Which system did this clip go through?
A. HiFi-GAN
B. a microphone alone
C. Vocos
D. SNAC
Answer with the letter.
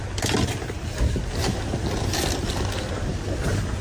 B